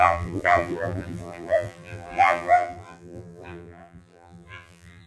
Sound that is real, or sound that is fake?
fake